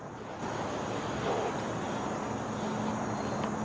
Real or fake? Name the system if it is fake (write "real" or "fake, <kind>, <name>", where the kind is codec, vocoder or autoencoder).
real